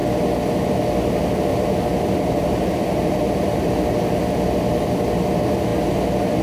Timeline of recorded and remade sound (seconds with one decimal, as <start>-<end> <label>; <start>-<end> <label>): 0.0-1.5 recorded; 1.5-3.7 remade; 3.7-6.4 recorded